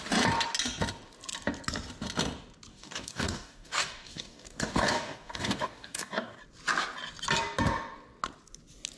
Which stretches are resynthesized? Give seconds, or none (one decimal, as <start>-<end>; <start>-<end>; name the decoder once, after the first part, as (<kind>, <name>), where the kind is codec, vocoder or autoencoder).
2.7-6.4 (codec, DAC)